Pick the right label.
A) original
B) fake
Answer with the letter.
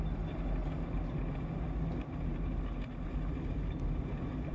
A